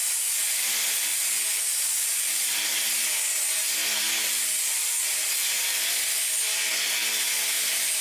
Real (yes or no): yes